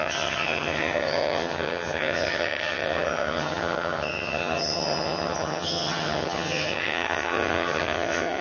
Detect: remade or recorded remade